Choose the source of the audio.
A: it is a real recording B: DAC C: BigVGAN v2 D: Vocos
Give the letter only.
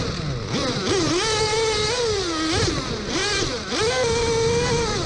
A